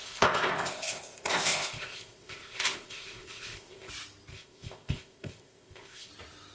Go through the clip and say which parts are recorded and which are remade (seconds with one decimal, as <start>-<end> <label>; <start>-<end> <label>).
0.0-3.9 remade; 3.9-4.3 recorded; 4.3-6.1 remade; 6.1-6.5 recorded